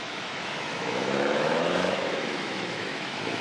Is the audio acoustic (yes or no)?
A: no